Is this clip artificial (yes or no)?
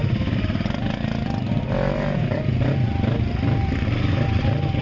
no